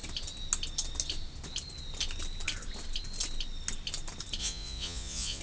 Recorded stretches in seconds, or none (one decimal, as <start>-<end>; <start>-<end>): 0.0-4.4

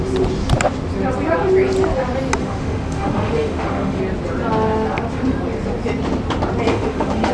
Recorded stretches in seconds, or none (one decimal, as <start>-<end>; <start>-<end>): 0.0-2.4; 4.0-6.7

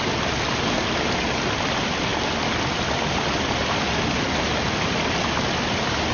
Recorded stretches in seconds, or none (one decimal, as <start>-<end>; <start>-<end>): 0.0-6.1

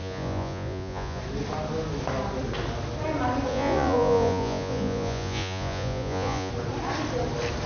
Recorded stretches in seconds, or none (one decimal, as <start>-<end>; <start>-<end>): 1.2-3.5; 6.5-7.7

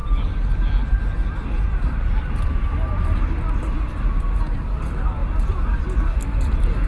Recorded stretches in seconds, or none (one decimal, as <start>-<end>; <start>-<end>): 0.0-6.9